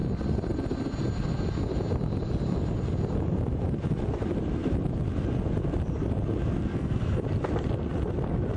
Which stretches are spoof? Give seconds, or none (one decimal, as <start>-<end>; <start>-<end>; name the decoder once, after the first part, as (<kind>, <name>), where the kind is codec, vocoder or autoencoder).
6.7-7.2 (codec, SNAC)